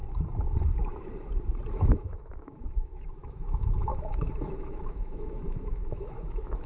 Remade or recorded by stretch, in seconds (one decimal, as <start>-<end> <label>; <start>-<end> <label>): 0.0-1.7 recorded; 1.7-6.7 remade